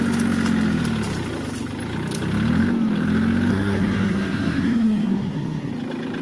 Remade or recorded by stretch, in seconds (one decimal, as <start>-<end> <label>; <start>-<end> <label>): 0.0-3.5 recorded; 3.5-5.7 remade; 5.7-6.2 recorded